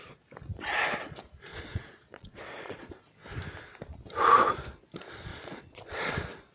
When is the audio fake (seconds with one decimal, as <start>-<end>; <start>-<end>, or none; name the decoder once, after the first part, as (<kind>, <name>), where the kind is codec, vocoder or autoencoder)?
1.5-2.9 (vocoder, Vocos); 5.3-6.1